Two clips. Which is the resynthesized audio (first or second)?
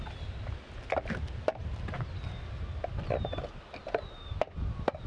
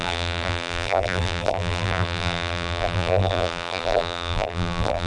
second